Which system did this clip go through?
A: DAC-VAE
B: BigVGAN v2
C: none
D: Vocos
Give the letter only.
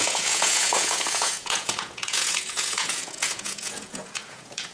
D